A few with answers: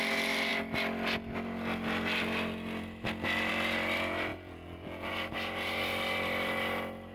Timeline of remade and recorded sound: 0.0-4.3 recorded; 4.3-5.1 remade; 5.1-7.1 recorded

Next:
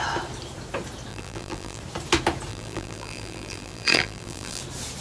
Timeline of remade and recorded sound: 0.0-1.1 recorded; 1.1-1.8 remade; 1.8-2.5 recorded; 2.5-4.6 remade; 4.6-5.0 recorded

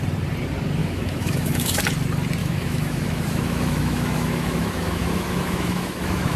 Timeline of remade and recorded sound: 0.0-0.8 recorded; 0.8-1.8 remade; 1.8-2.4 recorded; 2.4-6.4 remade

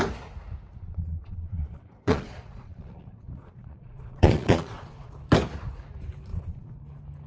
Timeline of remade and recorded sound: 0.0-0.7 recorded; 0.7-5.1 remade; 5.1-6.3 recorded; 6.3-6.8 remade; 6.8-7.3 recorded

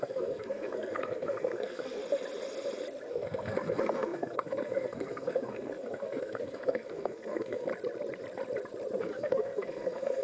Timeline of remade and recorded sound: 0.0-2.0 remade; 2.0-3.1 recorded; 3.1-7.7 remade; 7.7-9.0 recorded; 9.0-10.2 remade